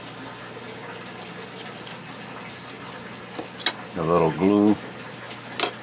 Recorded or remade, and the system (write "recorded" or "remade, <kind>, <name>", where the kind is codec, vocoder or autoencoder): recorded